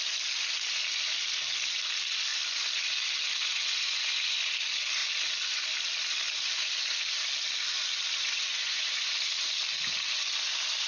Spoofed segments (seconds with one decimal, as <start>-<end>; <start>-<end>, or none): 8.5-9.1